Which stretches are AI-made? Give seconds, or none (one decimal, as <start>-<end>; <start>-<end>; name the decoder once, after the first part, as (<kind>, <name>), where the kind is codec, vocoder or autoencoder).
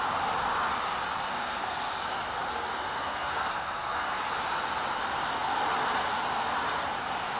1.3-1.9 (codec, SNAC); 2.5-4.2